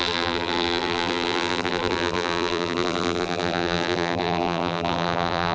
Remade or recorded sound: remade